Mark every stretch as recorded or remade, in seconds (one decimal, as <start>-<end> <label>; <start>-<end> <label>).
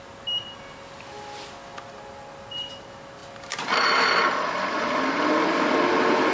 0.0-6.3 recorded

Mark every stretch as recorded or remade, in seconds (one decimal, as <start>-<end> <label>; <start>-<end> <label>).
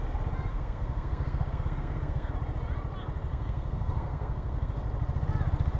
0.0-0.5 recorded; 0.5-2.3 remade; 2.3-3.3 recorded; 3.3-4.7 remade; 4.7-5.8 recorded